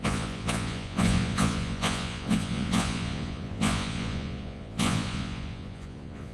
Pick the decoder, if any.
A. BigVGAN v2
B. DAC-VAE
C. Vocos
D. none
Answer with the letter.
C